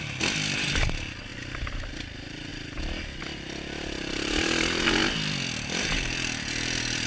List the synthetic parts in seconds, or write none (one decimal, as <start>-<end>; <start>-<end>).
0.0-1.3; 1.9-2.5; 3.2-7.1